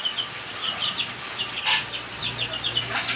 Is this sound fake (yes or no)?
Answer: no